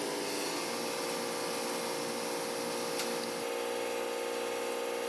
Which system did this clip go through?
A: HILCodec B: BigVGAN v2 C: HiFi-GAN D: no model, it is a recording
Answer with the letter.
D